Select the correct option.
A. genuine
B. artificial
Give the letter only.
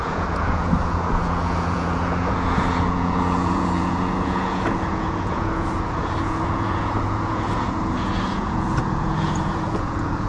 B